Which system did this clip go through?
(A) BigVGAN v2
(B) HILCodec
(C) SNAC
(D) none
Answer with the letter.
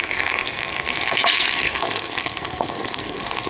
C